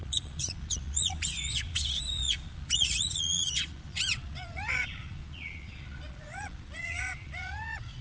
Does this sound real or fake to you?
fake